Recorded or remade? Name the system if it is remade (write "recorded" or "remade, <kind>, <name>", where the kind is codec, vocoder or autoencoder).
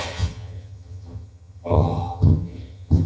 remade, vocoder, HiFi-GAN